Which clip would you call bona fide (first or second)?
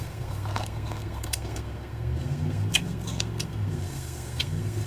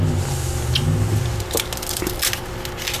second